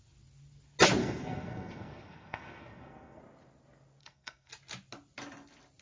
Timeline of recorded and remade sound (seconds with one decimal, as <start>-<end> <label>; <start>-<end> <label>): 0.0-1.0 recorded; 1.0-3.2 remade; 3.2-4.0 recorded; 4.0-4.5 remade; 4.5-5.8 recorded